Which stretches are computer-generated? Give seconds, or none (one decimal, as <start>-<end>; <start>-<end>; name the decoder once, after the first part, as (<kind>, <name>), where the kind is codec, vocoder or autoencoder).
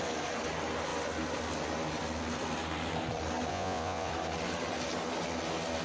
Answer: 3.5-4.1 (vocoder, Vocos)